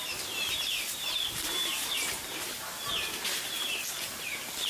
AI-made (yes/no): no